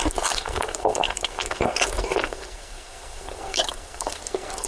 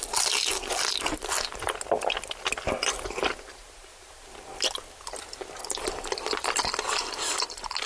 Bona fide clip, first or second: second